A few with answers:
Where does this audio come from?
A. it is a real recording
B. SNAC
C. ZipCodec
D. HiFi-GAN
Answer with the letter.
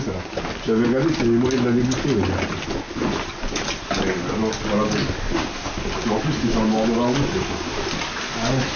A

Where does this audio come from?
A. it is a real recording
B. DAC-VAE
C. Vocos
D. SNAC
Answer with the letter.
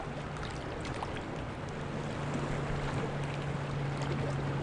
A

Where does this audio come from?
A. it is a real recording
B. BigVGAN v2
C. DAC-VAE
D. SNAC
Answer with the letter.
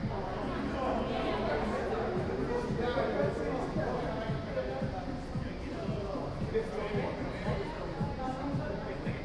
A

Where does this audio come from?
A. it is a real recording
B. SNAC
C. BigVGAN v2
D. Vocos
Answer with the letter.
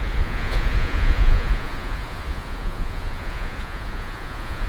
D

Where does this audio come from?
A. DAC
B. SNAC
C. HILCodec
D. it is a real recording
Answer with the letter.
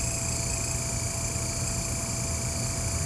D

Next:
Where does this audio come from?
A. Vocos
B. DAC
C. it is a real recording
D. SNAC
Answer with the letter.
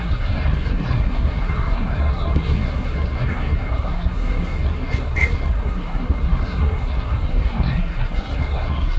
D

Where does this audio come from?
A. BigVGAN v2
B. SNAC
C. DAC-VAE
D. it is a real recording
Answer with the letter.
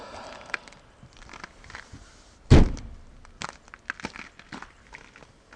D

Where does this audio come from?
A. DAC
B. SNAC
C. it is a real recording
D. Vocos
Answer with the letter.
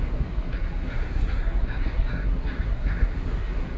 B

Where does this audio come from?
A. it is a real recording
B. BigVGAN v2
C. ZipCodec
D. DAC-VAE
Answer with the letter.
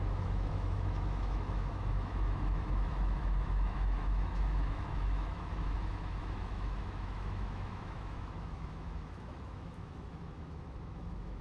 D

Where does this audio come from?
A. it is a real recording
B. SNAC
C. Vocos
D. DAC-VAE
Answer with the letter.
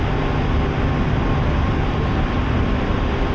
A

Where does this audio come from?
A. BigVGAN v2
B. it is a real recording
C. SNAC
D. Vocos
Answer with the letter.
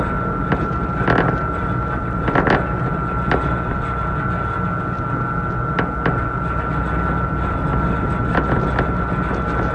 B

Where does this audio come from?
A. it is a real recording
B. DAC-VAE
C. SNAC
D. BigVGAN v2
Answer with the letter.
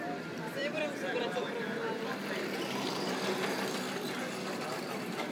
D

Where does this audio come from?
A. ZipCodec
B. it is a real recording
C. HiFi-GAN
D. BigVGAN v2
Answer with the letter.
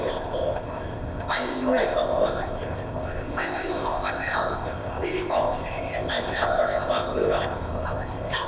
A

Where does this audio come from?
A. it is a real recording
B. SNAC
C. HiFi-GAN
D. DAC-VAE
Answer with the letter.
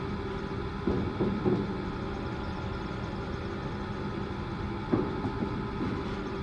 A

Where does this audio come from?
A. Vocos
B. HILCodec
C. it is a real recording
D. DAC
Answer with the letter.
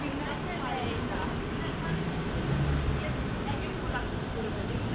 C